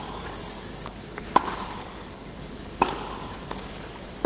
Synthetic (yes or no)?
yes